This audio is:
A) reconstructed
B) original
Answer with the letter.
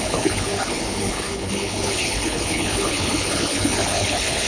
A